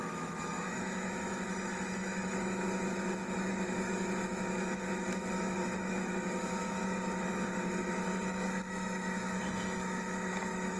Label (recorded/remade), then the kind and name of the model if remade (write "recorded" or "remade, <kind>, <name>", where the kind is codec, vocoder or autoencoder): remade, autoencoder, DAC-VAE